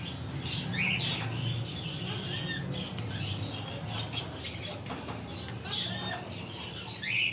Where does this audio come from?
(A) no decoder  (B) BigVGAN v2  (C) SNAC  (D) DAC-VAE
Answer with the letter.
A